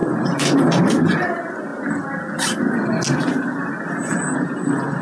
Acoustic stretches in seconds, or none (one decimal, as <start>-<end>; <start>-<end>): 0.0-5.0